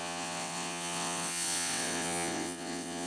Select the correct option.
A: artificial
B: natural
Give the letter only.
A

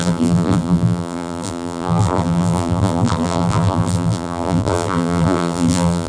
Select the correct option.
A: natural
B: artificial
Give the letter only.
B